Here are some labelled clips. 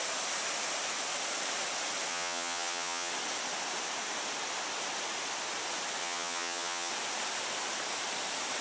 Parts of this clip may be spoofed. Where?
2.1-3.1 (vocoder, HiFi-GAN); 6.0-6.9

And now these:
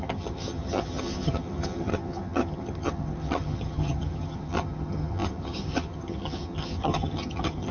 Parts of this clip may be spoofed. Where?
0.0-7.7 (vocoder, HiFi-GAN)

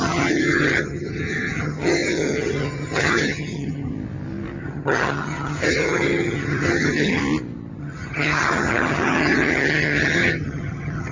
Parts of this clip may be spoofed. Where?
0.0-3.9 (vocoder, HiFi-GAN); 4.6-7.2; 7.8-11.1

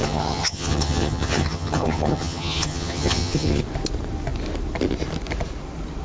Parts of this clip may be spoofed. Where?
0.0-3.6 (vocoder, HiFi-GAN)

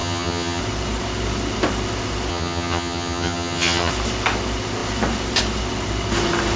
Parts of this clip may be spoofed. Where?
0.0-0.6 (vocoder, HiFi-GAN); 2.3-3.9